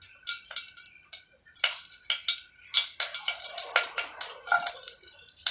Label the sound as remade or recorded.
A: recorded